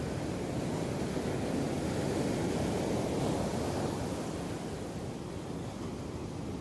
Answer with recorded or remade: recorded